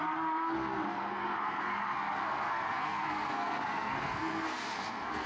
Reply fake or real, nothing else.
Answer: fake